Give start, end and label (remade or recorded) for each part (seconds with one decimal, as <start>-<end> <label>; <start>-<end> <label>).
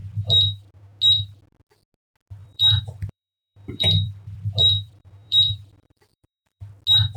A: 0.0-0.7 remade; 0.7-2.4 recorded; 2.4-6.7 remade; 6.7-7.2 recorded